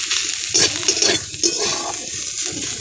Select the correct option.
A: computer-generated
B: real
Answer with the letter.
B